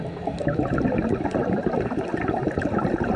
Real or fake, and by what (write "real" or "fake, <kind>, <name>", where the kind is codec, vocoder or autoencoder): real